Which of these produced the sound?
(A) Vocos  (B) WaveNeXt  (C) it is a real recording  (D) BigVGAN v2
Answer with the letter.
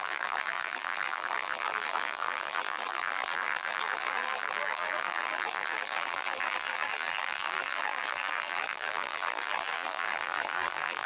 D